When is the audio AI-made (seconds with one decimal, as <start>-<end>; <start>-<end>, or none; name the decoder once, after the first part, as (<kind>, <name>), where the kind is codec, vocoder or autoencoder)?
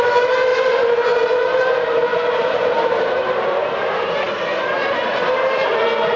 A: 2.1-5.8 (vocoder, BigVGAN v2)